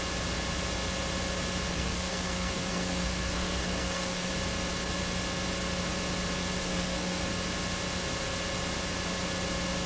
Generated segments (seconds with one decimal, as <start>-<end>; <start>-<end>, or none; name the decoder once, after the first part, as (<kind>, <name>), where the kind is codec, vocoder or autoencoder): 1.7-4.3 (codec, SNAC); 6.6-7.2